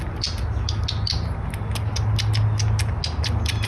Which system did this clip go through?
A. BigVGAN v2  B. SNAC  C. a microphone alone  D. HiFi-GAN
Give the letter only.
C